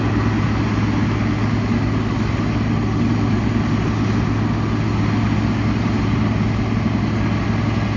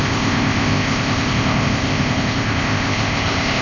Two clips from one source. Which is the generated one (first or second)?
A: second